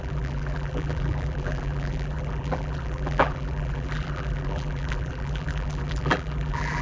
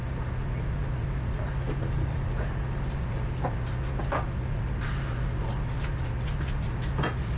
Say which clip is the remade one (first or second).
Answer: first